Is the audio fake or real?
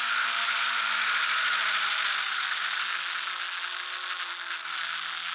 real